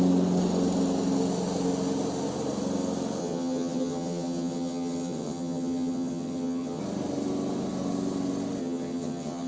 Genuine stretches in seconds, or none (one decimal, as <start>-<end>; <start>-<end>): 0.0-3.2; 6.8-8.6